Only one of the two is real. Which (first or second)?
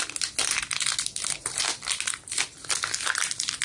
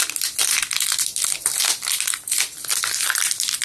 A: first